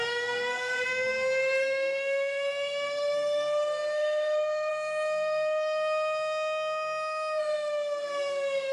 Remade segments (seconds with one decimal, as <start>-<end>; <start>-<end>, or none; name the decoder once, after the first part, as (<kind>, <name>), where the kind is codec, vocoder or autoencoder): 0.0-8.7 (codec, SNAC)